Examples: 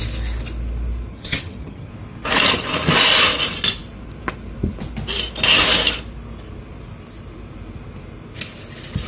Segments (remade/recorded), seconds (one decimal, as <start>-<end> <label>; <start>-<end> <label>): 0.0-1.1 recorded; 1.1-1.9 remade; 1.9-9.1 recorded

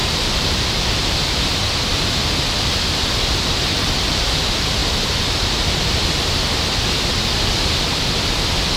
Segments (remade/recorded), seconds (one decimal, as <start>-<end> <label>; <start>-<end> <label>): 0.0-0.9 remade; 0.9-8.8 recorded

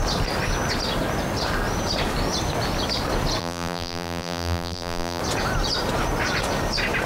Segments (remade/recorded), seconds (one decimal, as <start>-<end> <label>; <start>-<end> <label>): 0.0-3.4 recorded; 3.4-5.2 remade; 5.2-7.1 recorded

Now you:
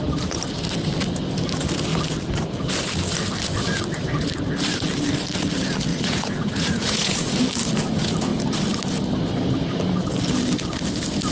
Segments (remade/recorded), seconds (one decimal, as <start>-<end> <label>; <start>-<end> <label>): 0.0-5.9 recorded; 5.9-7.4 remade; 7.4-11.3 recorded

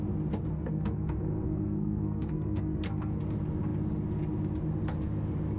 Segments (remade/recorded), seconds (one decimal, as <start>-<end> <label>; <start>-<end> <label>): 0.0-0.5 recorded; 0.5-3.2 remade; 3.2-5.6 recorded

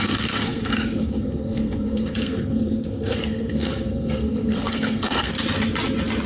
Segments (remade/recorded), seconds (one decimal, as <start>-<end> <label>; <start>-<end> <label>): 0.0-5.3 remade; 5.3-6.3 recorded